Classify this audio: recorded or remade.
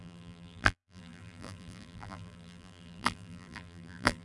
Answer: remade